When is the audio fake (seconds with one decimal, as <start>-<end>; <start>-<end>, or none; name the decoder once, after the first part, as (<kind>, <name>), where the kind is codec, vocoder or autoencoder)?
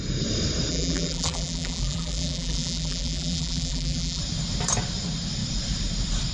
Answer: 0.7-4.2 (vocoder, BigVGAN v2)